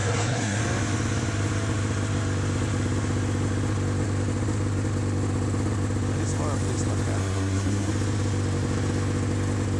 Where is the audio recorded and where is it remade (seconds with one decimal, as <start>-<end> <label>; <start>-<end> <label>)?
0.0-0.6 remade; 0.6-7.2 recorded; 7.2-7.9 remade; 7.9-9.8 recorded

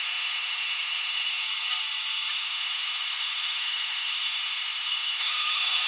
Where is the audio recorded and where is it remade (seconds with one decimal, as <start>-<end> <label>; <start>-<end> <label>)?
0.0-1.4 remade; 1.4-2.3 recorded; 2.3-5.9 remade

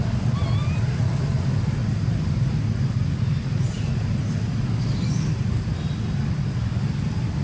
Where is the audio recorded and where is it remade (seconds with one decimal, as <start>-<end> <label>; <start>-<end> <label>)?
0.0-7.4 recorded

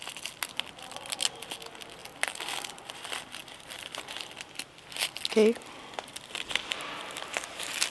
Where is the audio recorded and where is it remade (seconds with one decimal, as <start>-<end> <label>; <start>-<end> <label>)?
0.0-7.9 recorded

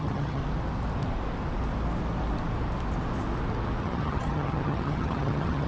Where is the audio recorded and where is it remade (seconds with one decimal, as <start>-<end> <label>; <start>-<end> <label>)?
0.0-0.4 remade; 0.4-3.8 recorded; 3.8-5.7 remade